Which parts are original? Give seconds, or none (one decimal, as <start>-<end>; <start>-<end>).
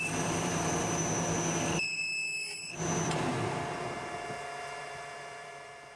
1.0-4.6